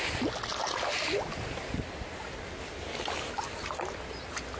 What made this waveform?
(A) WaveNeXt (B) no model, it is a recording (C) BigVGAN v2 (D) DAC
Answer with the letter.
B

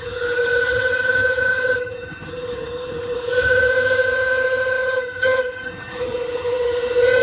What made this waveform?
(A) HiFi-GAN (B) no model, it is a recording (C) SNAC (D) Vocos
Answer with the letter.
A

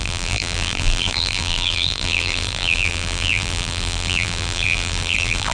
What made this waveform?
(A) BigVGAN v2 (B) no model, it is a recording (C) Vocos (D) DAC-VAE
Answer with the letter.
A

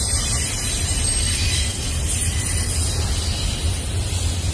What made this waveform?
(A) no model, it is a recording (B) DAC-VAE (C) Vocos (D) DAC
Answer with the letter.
A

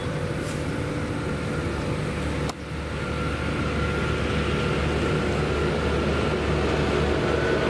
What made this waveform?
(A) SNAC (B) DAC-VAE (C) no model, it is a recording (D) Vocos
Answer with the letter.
C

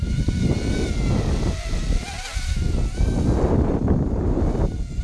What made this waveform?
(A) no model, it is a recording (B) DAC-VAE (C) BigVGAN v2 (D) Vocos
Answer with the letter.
A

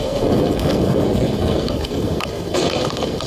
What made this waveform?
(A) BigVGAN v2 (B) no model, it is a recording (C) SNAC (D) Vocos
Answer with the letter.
C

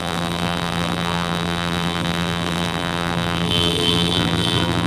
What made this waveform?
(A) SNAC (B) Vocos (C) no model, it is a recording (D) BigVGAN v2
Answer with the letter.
D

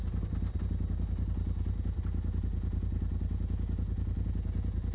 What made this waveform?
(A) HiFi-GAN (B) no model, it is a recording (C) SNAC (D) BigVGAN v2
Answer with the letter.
B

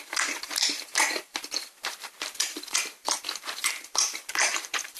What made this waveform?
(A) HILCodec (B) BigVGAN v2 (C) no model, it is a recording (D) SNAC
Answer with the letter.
B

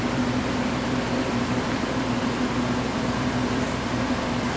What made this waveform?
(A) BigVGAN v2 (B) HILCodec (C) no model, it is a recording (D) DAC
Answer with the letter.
A